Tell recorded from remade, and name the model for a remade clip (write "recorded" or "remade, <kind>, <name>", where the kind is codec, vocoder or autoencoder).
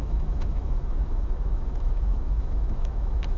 remade, autoencoder, DAC-VAE